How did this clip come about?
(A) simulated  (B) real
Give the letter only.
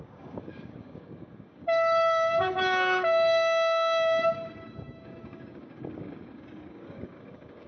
A